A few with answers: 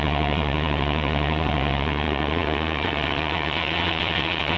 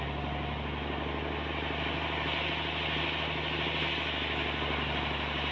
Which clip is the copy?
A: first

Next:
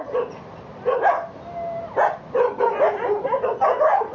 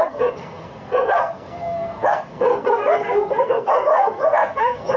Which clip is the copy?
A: second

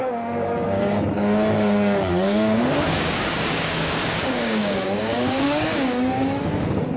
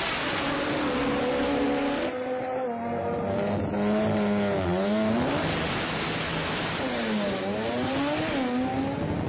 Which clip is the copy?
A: first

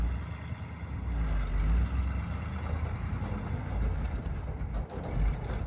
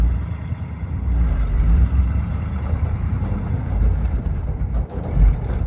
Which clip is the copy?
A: second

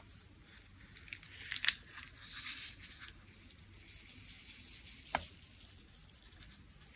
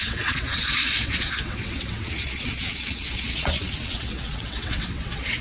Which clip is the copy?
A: second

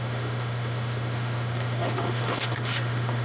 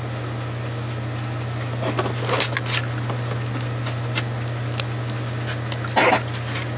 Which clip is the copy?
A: first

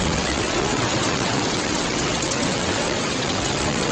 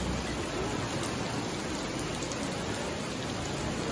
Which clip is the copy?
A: first